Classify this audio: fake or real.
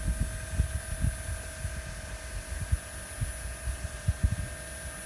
real